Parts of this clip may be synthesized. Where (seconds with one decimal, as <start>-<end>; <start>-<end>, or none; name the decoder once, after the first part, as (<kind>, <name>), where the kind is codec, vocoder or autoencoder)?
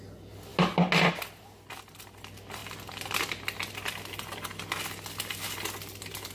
none